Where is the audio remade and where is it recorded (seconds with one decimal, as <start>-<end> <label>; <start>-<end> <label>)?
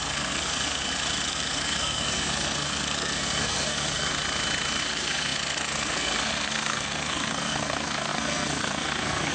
0.0-0.8 remade; 0.8-1.3 recorded; 1.3-4.1 remade; 4.1-4.8 recorded; 4.8-9.3 remade